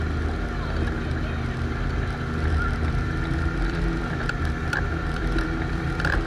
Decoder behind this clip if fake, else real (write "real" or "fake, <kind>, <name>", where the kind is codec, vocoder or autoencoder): fake, vocoder, BigVGAN v2